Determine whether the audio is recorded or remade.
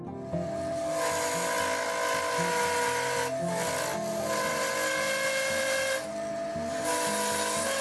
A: recorded